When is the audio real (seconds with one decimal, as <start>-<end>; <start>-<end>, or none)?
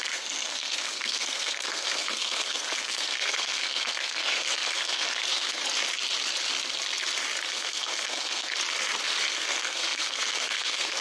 5.6-7.5; 8.5-9.3